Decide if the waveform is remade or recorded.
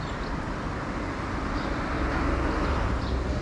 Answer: recorded